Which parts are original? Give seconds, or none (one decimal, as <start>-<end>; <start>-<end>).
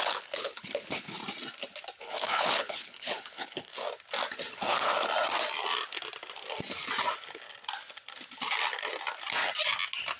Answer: 1.2-2.0; 3.7-4.5; 4.9-10.2